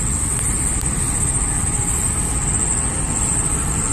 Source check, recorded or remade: recorded